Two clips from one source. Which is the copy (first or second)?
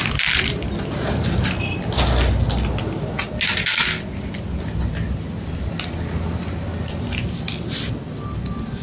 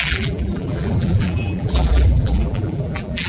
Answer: second